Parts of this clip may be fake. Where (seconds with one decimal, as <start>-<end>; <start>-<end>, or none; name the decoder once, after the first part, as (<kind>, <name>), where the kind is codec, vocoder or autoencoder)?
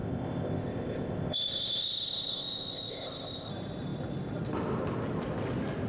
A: 0.0-3.5 (codec, ZipCodec)